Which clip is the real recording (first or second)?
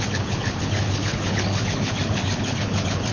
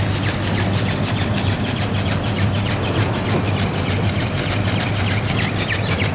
second